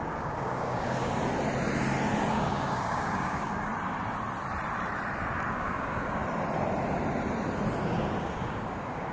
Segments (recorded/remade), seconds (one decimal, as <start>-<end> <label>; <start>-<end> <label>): 0.0-1.2 remade; 1.2-2.3 recorded; 2.3-3.7 remade; 3.7-5.5 recorded; 5.5-6.2 remade; 6.2-7.8 recorded; 7.8-9.1 remade